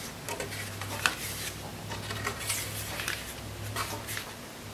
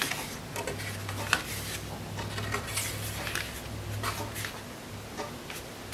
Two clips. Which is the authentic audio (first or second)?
second